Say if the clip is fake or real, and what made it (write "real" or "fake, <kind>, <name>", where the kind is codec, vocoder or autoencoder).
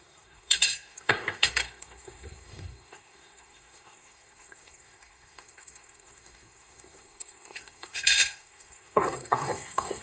fake, codec, SNAC